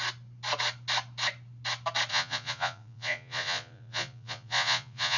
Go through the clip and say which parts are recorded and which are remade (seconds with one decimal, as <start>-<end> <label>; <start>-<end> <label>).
0.0-2.1 recorded; 2.1-5.2 remade